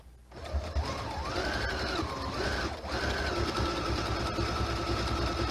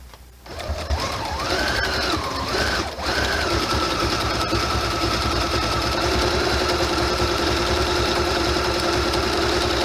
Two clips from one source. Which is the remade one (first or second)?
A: second